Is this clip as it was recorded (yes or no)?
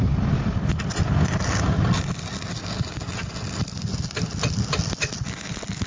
yes